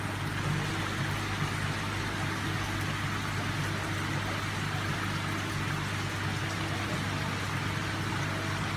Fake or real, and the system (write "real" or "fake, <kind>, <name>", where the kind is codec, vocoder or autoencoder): real